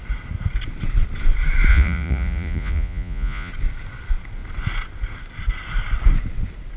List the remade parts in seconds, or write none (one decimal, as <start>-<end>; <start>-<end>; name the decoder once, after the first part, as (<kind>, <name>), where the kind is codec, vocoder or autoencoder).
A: 1.7-3.5 (vocoder, Vocos)